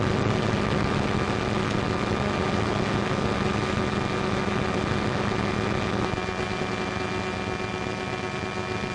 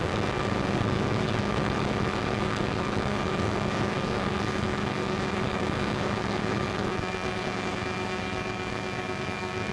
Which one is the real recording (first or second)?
first